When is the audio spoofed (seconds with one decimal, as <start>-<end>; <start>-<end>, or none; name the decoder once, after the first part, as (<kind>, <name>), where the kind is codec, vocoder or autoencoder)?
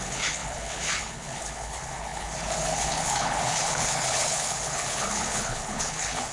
0.0-6.3 (codec, HILCodec)